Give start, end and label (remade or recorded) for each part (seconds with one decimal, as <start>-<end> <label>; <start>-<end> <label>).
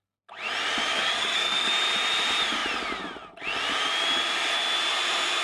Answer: 0.0-0.9 recorded; 0.9-1.7 remade; 1.7-5.4 recorded